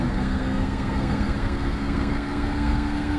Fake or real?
fake